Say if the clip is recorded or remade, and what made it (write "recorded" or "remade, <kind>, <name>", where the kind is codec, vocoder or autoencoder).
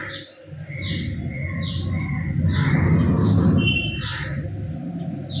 recorded